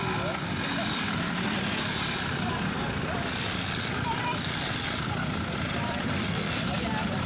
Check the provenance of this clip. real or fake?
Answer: fake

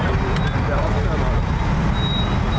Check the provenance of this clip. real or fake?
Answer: real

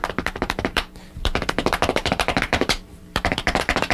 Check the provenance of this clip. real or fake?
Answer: fake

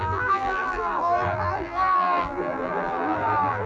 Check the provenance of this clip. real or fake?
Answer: fake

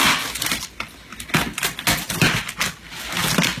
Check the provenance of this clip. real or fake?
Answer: real